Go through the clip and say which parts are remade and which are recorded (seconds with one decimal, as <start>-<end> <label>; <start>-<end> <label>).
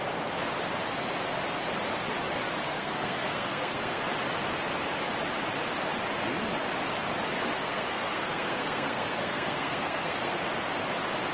0.0-2.6 recorded; 2.6-4.0 remade; 4.0-7.6 recorded; 7.6-10.4 remade; 10.4-11.3 recorded